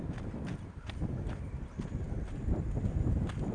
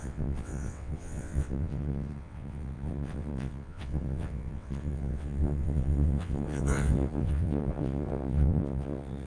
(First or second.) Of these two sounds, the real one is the first